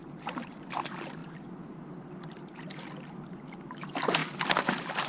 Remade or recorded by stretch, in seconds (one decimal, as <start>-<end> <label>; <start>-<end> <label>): 0.0-5.1 recorded